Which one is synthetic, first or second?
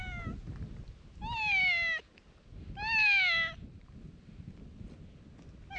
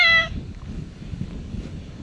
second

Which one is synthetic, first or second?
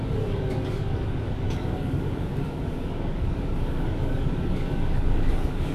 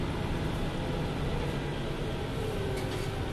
first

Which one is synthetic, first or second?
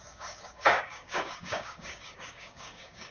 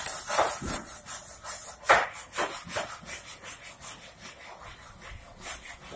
first